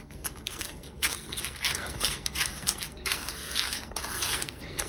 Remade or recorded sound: remade